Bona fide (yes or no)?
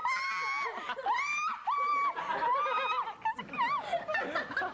yes